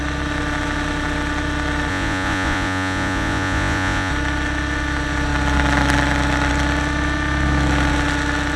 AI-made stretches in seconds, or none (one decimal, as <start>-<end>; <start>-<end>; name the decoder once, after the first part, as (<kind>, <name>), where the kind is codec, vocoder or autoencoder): 1.9-4.1 (vocoder, Vocos)